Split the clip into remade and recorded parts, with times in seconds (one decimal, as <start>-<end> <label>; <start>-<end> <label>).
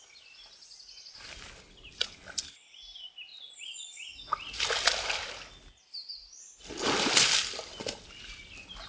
0.0-8.9 recorded